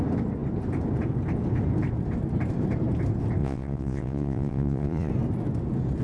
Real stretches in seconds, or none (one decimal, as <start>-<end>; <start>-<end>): 0.0-3.4; 5.1-6.0